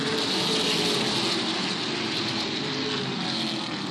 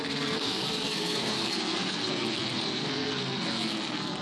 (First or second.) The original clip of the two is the first